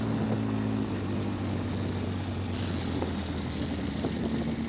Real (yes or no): yes